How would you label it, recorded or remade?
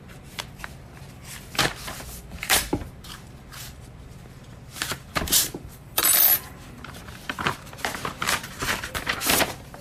remade